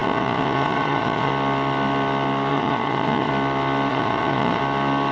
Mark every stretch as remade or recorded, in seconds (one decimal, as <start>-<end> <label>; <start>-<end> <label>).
0.0-1.3 remade; 1.3-2.5 recorded; 2.5-3.3 remade; 3.3-3.9 recorded; 3.9-4.6 remade; 4.6-5.1 recorded